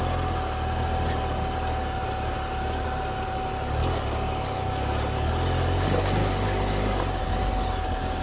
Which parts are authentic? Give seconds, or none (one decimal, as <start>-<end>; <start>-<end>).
0.0-3.8; 5.3-6.2; 7.2-8.2